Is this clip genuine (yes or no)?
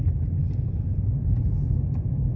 no